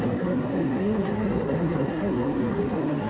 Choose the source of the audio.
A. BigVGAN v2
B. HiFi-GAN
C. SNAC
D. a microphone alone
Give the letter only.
C